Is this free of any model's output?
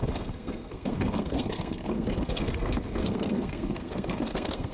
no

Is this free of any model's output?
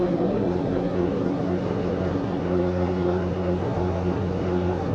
no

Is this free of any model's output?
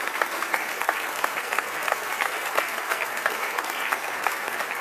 no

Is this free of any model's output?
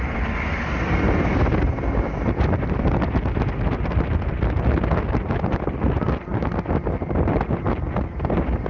yes